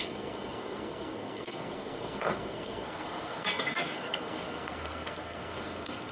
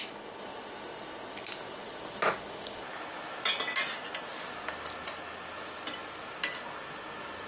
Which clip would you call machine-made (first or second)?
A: first